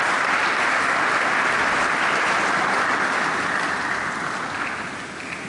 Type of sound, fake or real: real